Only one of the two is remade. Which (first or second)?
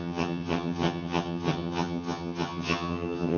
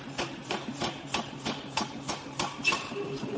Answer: first